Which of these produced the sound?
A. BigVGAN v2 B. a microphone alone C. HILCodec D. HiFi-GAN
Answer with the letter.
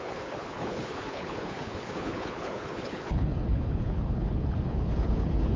C